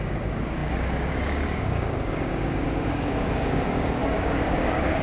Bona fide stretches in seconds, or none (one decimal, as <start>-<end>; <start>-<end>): none